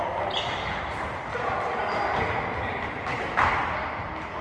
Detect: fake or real real